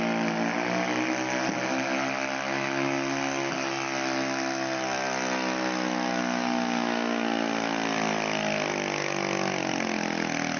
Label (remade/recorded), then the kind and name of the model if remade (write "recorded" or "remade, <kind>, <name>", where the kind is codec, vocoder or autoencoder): recorded